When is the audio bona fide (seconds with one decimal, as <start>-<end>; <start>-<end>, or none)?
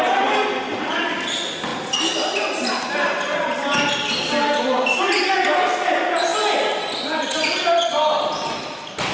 0.0-9.1